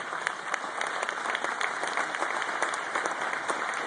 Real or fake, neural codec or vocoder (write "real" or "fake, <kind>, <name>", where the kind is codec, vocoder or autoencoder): real